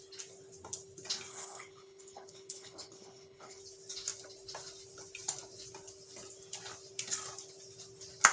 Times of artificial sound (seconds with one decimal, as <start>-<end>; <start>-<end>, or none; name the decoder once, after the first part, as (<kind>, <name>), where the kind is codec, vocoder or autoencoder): 1.3-3.6 (codec, HILCodec)